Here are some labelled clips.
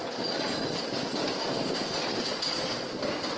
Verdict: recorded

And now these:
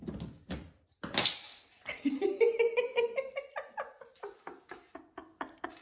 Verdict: recorded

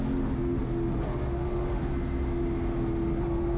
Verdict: recorded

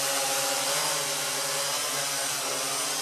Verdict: recorded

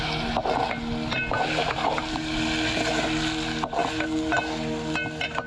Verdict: recorded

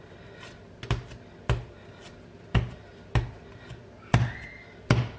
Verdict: recorded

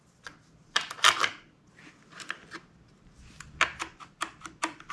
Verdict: recorded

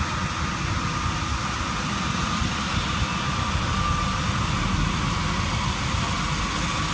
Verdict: recorded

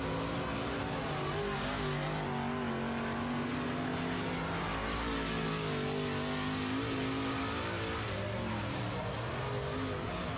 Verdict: recorded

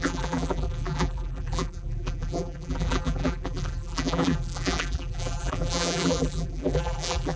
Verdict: remade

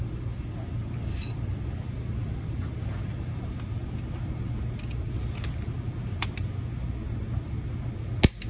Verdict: recorded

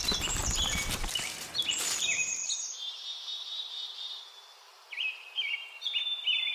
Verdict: remade